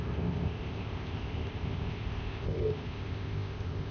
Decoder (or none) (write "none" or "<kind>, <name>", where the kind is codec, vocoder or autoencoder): codec, ZipCodec